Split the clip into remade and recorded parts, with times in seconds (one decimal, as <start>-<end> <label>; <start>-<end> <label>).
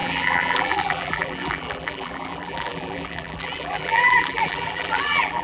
0.0-5.4 remade